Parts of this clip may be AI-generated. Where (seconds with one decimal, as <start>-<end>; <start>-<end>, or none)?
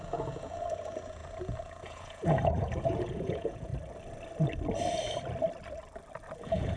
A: 0.0-3.7; 6.3-6.8